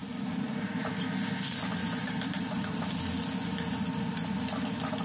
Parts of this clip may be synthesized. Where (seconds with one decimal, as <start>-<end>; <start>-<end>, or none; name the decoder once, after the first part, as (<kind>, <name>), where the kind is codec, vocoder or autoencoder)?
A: 0.0-0.9 (vocoder, BigVGAN v2); 1.8-2.8